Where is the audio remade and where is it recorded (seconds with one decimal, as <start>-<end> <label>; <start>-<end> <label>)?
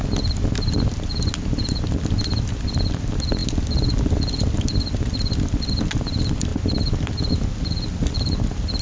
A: 0.0-8.8 recorded